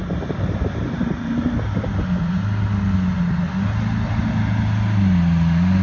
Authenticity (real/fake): real